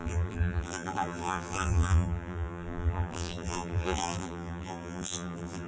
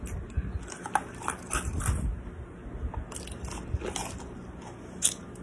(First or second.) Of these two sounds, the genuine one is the second